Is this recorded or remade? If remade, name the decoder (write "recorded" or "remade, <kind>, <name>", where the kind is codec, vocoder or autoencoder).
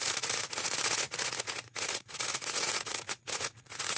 remade, vocoder, Vocos